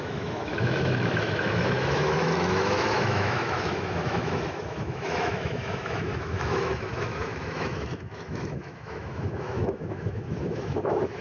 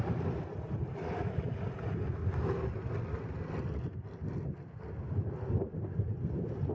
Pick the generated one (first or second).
first